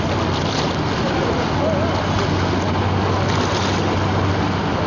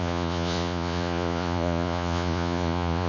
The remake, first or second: second